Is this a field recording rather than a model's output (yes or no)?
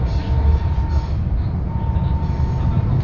yes